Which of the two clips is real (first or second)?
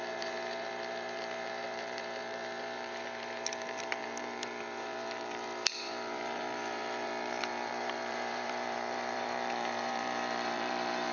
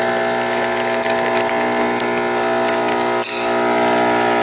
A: second